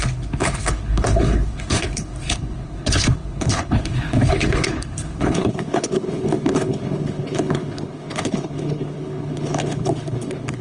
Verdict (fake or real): fake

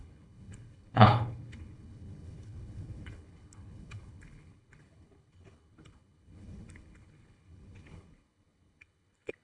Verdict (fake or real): fake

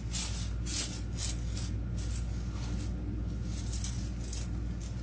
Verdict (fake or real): real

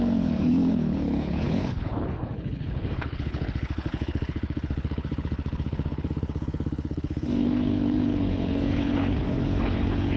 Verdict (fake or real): fake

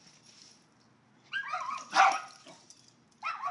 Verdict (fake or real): real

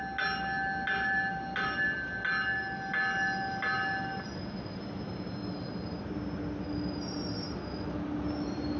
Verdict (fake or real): real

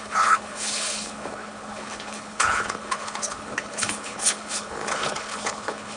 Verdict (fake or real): fake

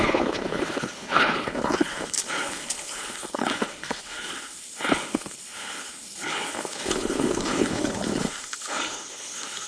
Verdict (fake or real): fake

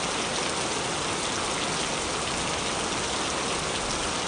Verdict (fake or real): real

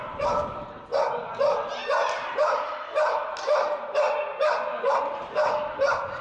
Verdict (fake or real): real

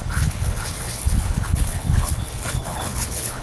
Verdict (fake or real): fake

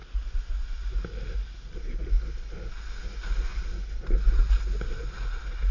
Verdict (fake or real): real